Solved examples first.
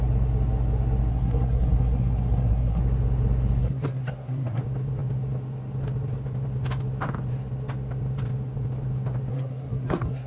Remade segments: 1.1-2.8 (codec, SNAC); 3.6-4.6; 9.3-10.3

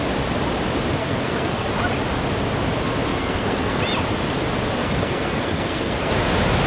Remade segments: 1.0-1.7 (codec, SNAC); 3.1-3.8; 4.8-6.1

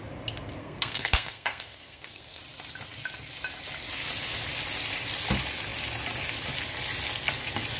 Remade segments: 0.6-2.4 (codec, SNAC)

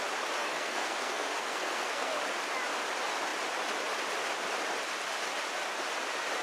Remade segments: 0.4-2.2 (codec, SNAC)

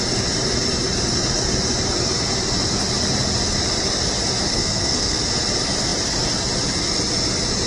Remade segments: 4.5-5.2 (codec, SNAC)

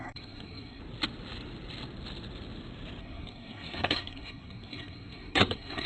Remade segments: 0.0-0.8 (codec, SNAC); 3.0-5.9

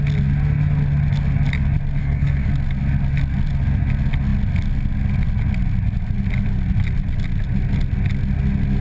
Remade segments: 2.0-2.5 (codec, SNAC)

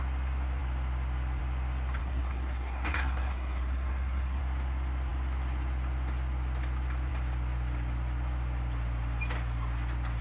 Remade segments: 2.0-4.4 (codec, SNAC)